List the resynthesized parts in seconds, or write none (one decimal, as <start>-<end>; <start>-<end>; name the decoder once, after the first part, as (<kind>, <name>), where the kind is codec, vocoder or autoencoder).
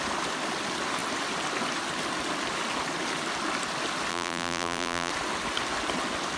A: 4.1-5.1 (vocoder, BigVGAN v2)